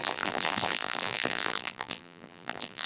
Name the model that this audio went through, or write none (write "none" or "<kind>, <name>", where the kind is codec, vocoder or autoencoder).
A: vocoder, BigVGAN v2